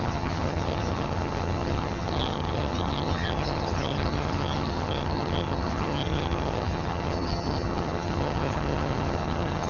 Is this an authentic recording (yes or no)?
no